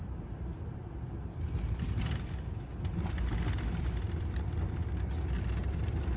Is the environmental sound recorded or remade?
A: recorded